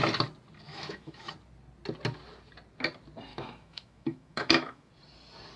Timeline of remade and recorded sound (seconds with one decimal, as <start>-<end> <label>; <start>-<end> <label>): 0.0-0.7 recorded; 0.7-1.3 remade; 1.3-3.3 recorded; 3.3-4.9 remade; 4.9-5.6 recorded